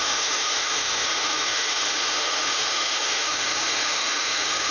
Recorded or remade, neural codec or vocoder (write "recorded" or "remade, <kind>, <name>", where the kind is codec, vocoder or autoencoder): remade, autoencoder, DAC-VAE